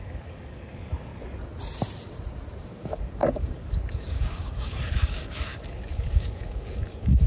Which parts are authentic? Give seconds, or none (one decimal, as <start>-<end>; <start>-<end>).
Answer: 1.1-2.6